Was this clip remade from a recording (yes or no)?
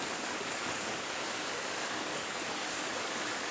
yes